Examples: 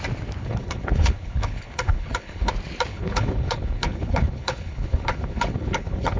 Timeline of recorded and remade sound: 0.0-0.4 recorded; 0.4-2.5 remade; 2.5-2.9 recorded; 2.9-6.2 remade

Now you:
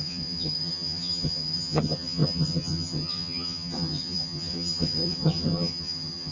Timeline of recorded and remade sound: 0.0-6.3 remade

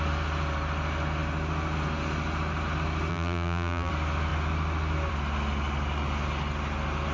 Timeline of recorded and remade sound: 0.0-3.1 recorded; 3.1-3.9 remade; 3.9-7.1 recorded

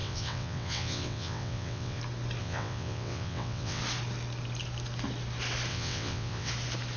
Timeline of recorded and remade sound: 0.0-2.0 remade; 2.0-2.4 recorded; 2.4-3.8 remade; 3.8-5.7 recorded; 5.7-6.5 remade; 6.5-7.0 recorded

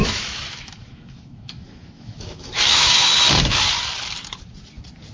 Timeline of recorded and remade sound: 0.0-3.1 remade; 3.1-5.1 recorded

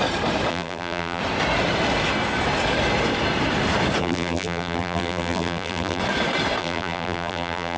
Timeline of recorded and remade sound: 0.0-0.5 recorded; 0.5-1.2 remade; 1.2-4.0 recorded; 4.0-6.0 remade; 6.0-6.6 recorded; 6.6-7.8 remade

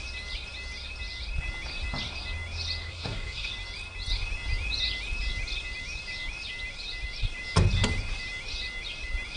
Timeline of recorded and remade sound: 0.0-2.8 recorded; 2.8-3.5 remade; 3.5-9.4 recorded

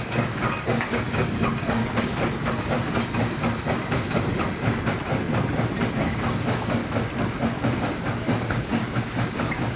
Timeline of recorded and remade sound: 0.0-1.8 remade; 1.8-5.9 recorded; 5.9-6.8 remade; 6.8-7.8 recorded; 7.8-9.8 remade